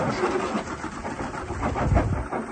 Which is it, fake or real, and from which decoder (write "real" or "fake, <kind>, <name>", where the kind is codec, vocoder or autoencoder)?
fake, vocoder, BigVGAN v2